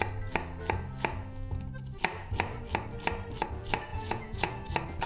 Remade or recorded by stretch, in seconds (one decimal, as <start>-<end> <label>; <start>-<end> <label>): 0.0-3.9 recorded; 3.9-4.5 remade; 4.5-5.1 recorded